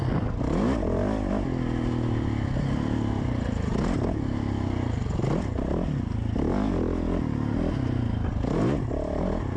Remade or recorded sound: recorded